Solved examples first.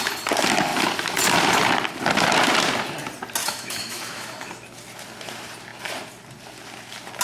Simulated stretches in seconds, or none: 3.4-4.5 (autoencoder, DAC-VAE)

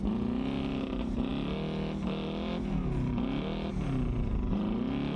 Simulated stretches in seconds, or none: none

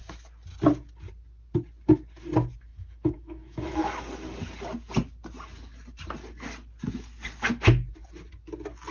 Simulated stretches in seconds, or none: 2.7-3.9 (autoencoder, DAC-VAE)

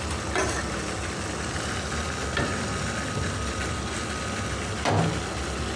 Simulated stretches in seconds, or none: none

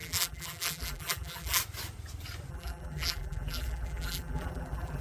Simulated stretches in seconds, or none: 0.0-1.6 (vocoder, BigVGAN v2); 2.5-5.0

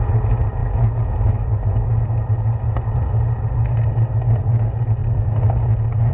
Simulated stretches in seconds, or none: none